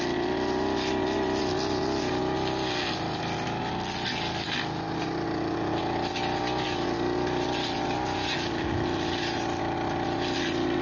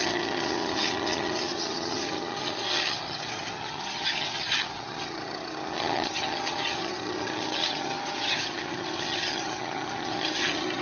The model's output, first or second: second